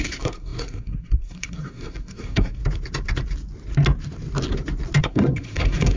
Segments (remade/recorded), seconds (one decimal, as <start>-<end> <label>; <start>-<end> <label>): 0.0-2.6 remade; 2.6-5.0 recorded; 5.0-6.0 remade